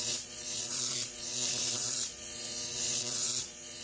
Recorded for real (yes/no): no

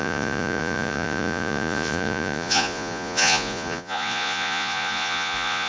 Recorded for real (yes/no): no